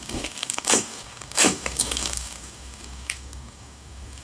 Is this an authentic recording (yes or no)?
no